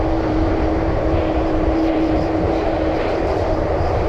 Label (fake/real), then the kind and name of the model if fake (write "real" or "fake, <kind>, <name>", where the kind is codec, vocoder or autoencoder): fake, vocoder, BigVGAN v2